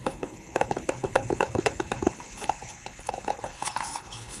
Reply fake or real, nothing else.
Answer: fake